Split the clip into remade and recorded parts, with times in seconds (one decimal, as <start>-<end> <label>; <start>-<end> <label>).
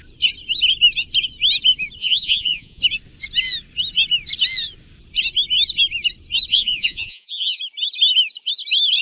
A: 0.0-2.0 recorded; 2.0-2.8 remade; 2.8-6.5 recorded; 6.5-7.6 remade; 7.6-9.0 recorded